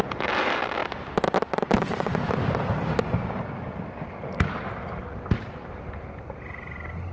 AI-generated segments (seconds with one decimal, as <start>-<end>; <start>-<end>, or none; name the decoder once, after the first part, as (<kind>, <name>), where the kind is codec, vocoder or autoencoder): none